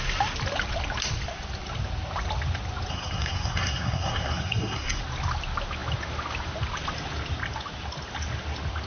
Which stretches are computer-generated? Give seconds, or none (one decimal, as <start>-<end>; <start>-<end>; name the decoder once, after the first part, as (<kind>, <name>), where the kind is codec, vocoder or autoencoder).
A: 2.9-5.0 (codec, SNAC)